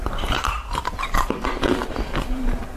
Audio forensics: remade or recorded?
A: remade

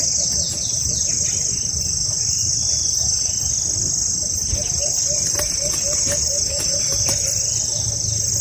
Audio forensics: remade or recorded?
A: recorded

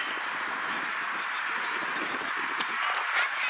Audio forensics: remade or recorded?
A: recorded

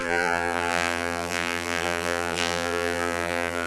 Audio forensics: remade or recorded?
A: remade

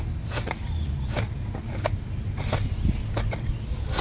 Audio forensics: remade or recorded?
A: recorded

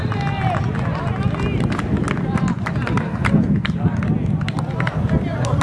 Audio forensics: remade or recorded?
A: recorded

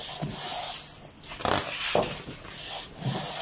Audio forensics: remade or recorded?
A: recorded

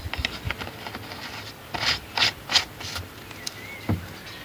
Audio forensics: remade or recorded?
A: recorded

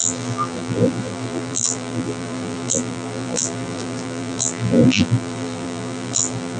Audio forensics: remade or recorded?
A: remade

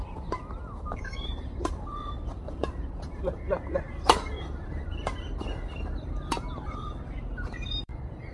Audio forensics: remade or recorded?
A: remade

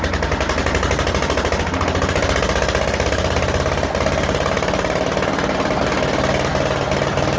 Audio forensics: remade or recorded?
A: recorded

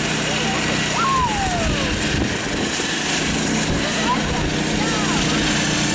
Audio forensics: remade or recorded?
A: recorded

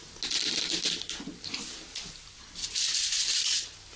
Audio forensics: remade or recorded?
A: recorded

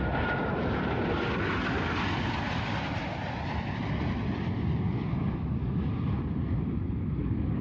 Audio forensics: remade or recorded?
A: recorded